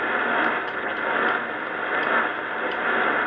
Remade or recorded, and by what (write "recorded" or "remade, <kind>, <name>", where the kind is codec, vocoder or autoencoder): recorded